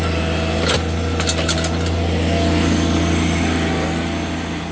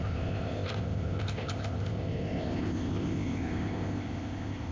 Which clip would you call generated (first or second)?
second